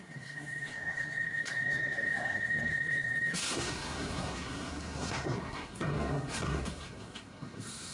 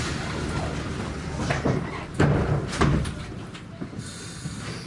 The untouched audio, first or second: second